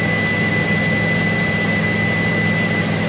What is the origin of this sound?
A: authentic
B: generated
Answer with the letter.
A